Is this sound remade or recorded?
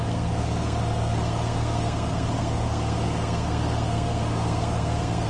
remade